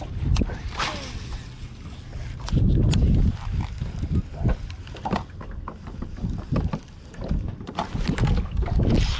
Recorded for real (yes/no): yes